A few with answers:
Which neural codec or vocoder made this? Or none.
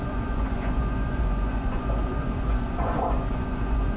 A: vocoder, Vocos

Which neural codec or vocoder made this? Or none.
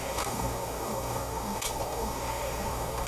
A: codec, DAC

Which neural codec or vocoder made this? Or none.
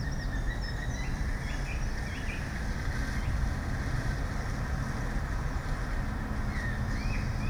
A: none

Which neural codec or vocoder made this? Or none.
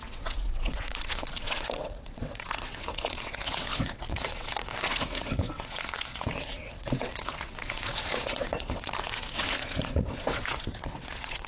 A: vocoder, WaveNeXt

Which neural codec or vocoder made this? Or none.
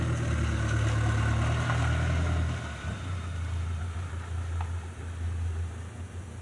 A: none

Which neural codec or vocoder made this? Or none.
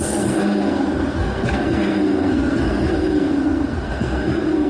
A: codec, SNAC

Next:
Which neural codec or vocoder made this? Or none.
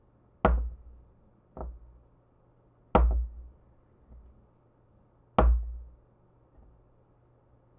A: none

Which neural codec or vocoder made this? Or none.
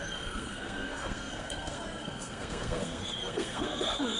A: codec, SNAC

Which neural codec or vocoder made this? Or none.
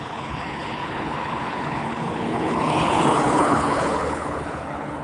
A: codec, HILCodec